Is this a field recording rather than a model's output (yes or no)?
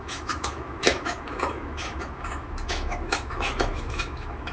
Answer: no